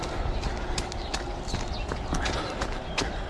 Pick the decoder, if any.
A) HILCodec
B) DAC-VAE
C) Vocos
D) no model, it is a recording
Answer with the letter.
D